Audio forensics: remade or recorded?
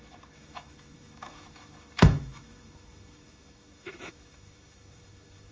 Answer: remade